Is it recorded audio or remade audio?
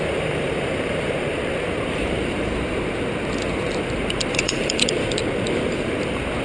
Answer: remade